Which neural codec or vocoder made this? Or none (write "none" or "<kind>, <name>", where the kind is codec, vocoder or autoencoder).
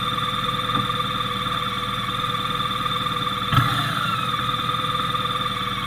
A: none